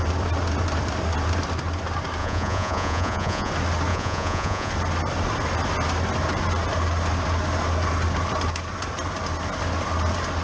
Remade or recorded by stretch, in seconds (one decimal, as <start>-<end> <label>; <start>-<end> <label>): 0.0-2.2 recorded; 2.2-3.5 remade; 3.5-3.9 recorded; 3.9-4.7 remade; 4.7-10.4 recorded

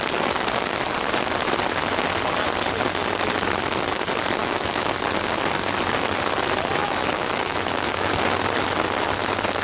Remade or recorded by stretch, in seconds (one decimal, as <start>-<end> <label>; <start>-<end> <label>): 0.0-4.4 recorded; 4.4-4.9 remade; 4.9-6.8 recorded; 6.8-8.1 remade; 8.1-9.6 recorded